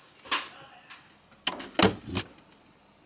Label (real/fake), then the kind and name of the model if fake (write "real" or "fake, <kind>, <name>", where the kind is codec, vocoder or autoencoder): real